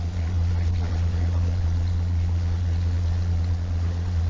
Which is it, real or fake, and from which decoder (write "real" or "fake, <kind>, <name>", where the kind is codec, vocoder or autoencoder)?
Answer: fake, vocoder, Vocos